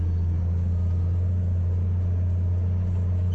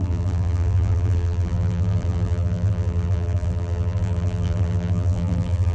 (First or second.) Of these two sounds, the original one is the first